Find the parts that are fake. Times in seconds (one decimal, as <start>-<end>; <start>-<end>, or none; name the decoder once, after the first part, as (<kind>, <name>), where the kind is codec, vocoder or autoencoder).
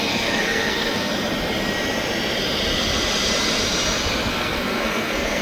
0.0-1.1 (codec, SNAC); 4.3-5.4